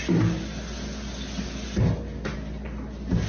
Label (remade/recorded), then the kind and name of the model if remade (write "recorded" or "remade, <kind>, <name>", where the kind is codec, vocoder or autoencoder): recorded